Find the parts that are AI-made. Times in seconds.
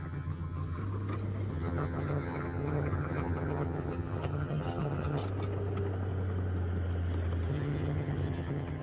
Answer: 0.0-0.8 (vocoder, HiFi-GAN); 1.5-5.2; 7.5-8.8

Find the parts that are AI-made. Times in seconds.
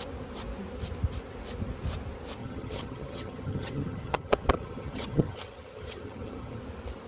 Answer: 2.4-6.6 (vocoder, HiFi-GAN)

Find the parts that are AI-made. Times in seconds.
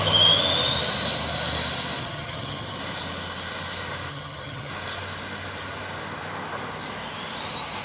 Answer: 2.0-2.8 (vocoder, HiFi-GAN); 4.1-4.7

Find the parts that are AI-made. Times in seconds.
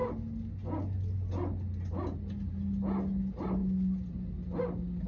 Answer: none